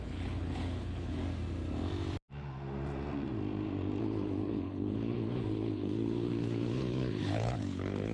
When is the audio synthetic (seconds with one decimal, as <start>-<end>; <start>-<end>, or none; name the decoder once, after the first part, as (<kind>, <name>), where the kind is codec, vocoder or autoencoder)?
0.0-1.2 (codec, HILCodec); 4.0-8.1